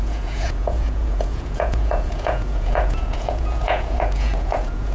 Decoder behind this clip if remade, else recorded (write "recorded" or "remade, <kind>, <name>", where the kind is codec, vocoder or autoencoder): remade, vocoder, Vocos